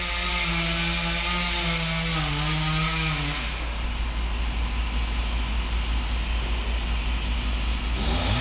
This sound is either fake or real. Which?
real